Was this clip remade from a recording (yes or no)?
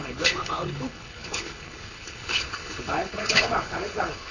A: yes